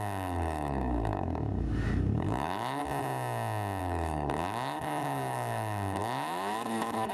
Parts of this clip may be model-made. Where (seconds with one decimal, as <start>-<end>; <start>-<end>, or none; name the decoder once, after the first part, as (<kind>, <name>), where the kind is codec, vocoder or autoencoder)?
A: 0.0-2.8 (codec, DAC); 3.8-7.1